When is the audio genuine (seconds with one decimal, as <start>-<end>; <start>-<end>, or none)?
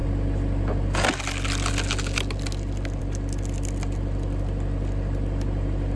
0.0-6.0